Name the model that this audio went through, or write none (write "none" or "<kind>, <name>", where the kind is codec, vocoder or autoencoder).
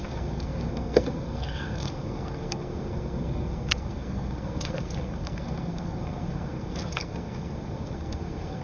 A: codec, SNAC